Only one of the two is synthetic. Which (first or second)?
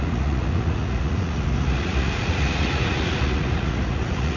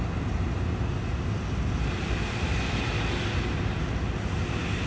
first